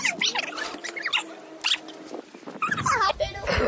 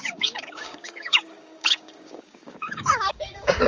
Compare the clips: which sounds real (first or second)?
first